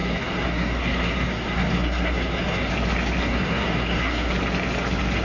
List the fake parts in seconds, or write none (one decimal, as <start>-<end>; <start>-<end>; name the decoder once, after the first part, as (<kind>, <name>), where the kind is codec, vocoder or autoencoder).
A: 0.0-2.7 (codec, SNAC); 3.2-4.3